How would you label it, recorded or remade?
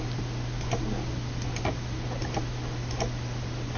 recorded